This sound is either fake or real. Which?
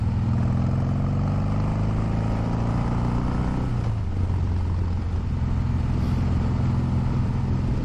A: real